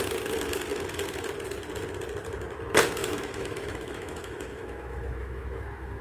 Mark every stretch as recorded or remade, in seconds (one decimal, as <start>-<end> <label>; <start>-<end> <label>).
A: 0.0-3.0 recorded; 3.0-6.0 remade